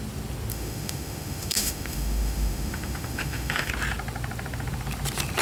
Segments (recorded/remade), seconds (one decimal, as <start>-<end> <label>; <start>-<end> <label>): 0.0-0.5 recorded; 0.5-3.7 remade; 3.7-5.4 recorded